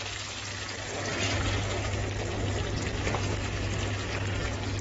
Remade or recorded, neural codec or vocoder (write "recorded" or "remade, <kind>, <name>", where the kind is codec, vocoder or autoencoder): recorded